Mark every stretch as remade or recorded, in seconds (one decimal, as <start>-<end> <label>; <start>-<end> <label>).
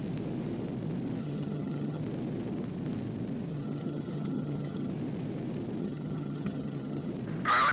0.0-1.2 recorded; 1.2-2.0 remade; 2.0-3.5 recorded; 3.5-4.9 remade; 4.9-5.8 recorded; 5.8-7.1 remade; 7.1-7.7 recorded